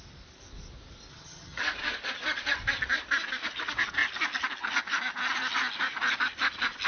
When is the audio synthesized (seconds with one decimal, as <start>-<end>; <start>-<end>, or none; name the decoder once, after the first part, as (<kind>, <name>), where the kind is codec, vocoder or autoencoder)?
1.1-1.6 (vocoder, HiFi-GAN)